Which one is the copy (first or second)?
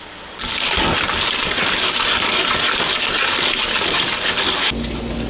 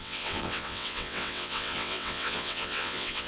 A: second